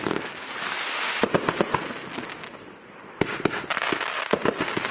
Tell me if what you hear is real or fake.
real